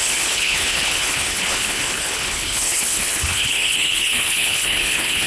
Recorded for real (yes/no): no